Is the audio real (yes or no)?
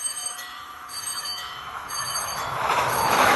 no